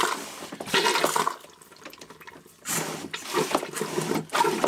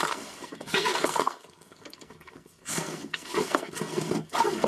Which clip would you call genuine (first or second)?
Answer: first